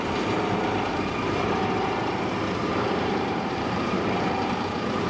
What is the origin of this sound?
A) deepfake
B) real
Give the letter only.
A